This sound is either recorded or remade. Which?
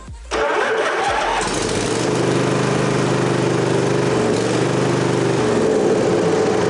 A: recorded